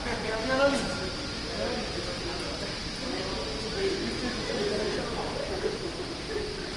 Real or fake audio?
real